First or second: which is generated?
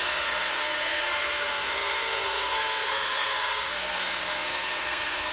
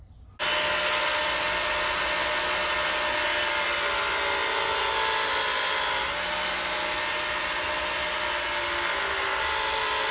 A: first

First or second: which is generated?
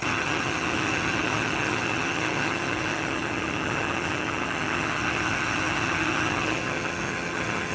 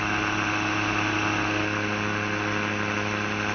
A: first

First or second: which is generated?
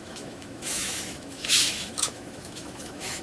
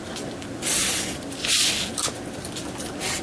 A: first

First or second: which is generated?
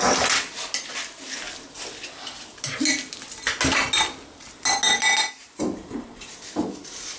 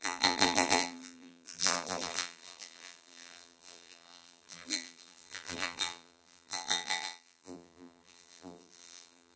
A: second